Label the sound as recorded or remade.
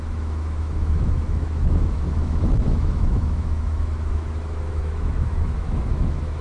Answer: remade